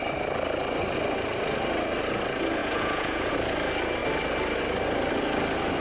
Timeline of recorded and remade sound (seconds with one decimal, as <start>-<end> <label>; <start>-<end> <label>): 0.0-2.6 recorded; 2.6-3.3 remade; 3.3-5.8 recorded